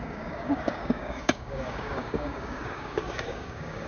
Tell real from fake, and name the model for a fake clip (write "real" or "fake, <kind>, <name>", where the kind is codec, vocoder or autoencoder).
fake, codec, DAC